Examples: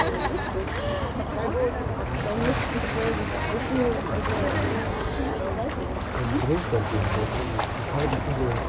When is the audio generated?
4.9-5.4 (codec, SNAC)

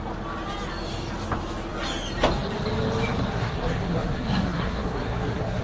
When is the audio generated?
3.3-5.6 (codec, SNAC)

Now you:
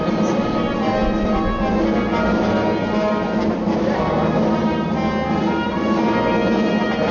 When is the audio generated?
none

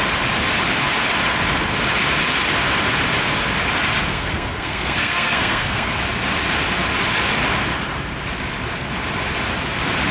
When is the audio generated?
4.1-6.0 (codec, SNAC)

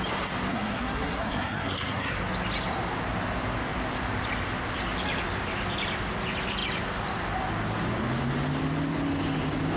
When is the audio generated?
0.5-2.2 (codec, SNAC)